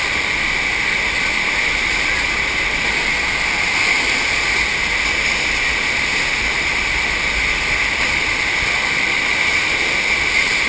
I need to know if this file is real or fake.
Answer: real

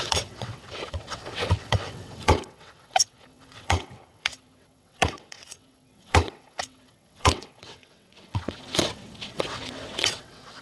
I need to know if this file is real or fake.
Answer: fake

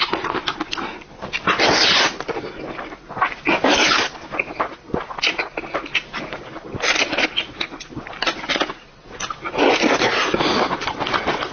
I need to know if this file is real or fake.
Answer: real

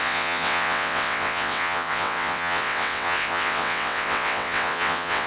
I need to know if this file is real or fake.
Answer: fake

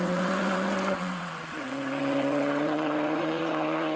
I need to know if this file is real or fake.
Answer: fake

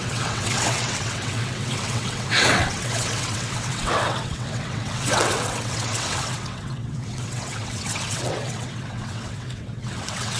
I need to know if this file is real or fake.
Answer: fake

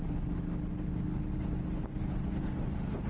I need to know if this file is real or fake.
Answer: real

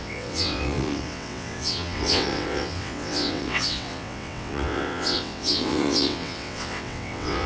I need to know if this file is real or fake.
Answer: fake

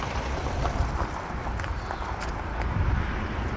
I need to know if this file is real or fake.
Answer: real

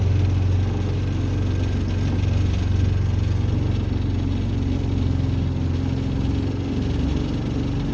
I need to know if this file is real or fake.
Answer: real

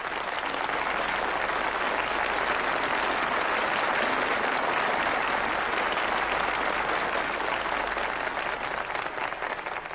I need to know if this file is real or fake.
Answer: real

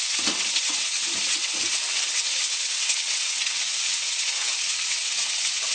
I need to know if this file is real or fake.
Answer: fake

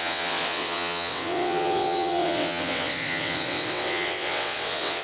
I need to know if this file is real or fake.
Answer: fake